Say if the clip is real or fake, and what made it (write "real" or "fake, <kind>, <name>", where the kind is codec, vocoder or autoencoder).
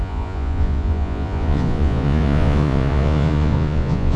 fake, vocoder, Vocos